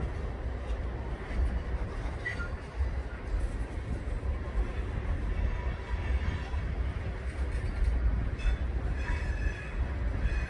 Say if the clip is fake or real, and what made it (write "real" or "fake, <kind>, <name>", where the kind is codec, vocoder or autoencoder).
real